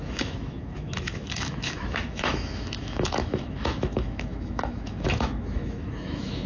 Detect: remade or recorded remade